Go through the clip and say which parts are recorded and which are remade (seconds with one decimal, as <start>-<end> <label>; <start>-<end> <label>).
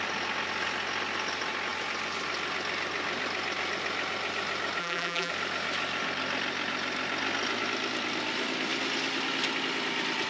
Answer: 0.0-4.8 recorded; 4.8-5.3 remade; 5.3-10.3 recorded